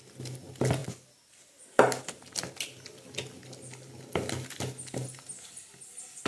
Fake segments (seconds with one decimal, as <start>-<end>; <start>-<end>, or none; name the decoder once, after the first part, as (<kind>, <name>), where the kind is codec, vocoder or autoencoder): none